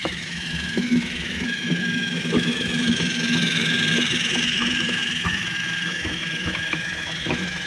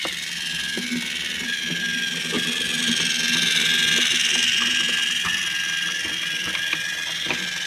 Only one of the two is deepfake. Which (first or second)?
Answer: first